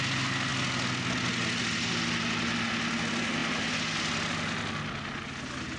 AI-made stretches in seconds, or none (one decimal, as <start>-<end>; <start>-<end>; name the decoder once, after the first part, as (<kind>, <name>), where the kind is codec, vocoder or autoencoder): none